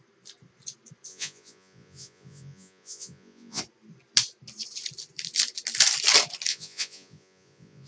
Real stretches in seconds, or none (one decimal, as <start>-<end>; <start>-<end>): 0.0-1.1; 3.6-6.5